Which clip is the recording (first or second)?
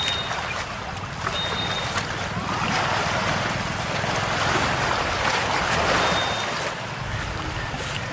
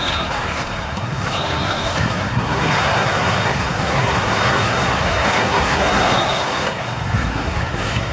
first